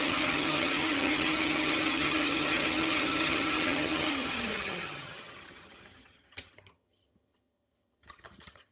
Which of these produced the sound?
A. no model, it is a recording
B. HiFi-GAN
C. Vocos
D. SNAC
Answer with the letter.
B